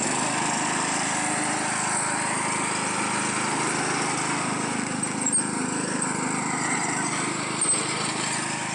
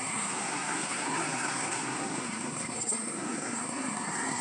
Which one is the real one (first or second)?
first